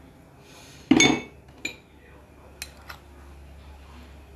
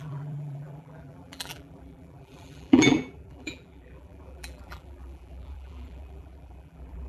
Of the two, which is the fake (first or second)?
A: second